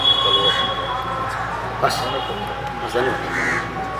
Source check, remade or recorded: recorded